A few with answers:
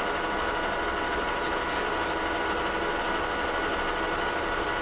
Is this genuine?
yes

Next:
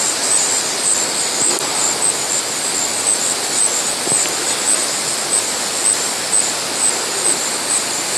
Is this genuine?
yes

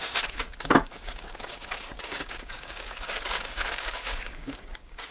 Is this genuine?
no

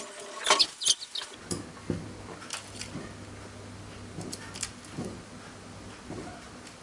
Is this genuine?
yes